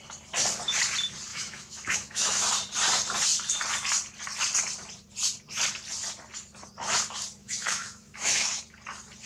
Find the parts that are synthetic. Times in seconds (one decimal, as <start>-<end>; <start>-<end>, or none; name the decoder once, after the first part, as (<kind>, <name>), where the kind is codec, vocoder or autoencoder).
1.3-2.5 (autoencoder, DAC-VAE); 7.4-8.6